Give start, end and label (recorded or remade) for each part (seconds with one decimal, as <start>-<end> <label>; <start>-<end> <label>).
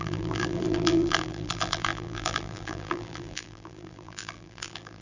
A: 0.0-5.0 remade